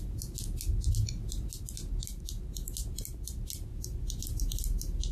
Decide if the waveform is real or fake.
real